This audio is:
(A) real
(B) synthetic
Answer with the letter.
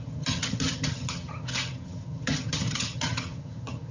B